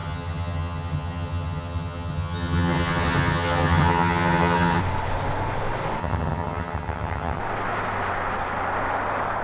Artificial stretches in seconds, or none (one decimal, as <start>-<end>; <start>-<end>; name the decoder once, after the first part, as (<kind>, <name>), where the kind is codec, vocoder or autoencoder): 0.0-4.8 (vocoder, HiFi-GAN); 6.0-7.4